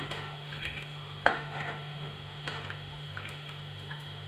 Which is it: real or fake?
fake